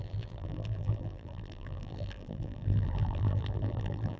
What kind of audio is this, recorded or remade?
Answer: remade